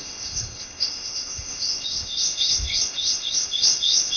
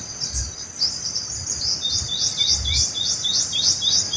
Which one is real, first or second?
second